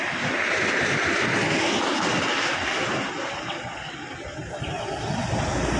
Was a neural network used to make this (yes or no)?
no